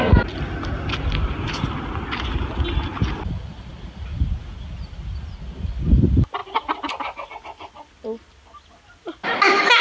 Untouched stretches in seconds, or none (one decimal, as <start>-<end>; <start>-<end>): 0.0-9.8